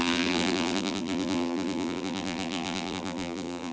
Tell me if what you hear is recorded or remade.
remade